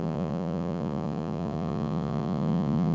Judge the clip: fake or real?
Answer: fake